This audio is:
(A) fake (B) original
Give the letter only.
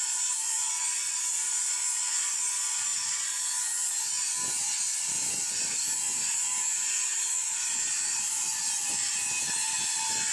B